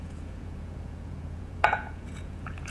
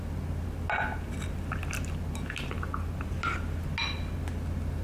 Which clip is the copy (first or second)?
first